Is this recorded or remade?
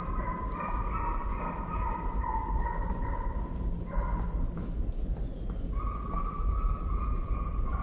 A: recorded